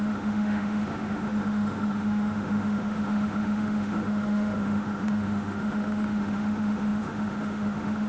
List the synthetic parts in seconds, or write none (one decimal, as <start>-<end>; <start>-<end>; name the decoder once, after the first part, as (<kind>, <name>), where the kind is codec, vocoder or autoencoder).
0.0-8.1 (autoencoder, DAC-VAE)